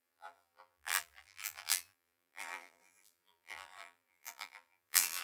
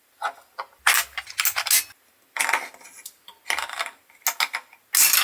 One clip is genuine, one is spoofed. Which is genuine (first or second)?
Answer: second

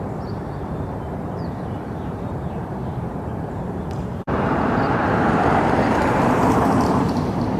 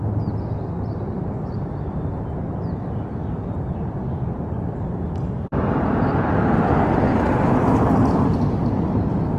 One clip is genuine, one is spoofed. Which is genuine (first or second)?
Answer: second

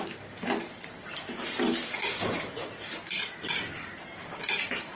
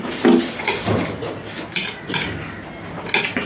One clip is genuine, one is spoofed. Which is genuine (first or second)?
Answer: second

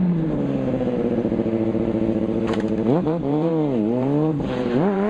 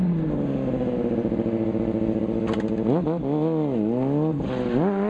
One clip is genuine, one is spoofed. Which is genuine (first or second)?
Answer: second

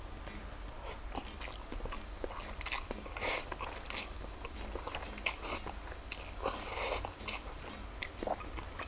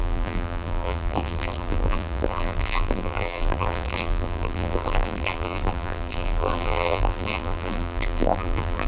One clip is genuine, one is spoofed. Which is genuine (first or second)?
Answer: first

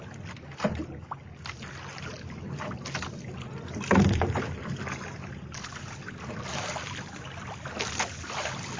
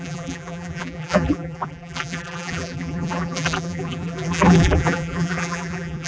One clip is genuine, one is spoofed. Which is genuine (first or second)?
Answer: first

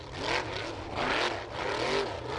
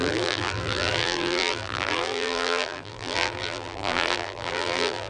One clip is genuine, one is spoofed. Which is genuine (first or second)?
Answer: first